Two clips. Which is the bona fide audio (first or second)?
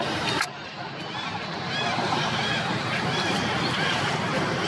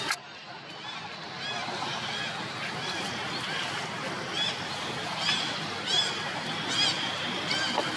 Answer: second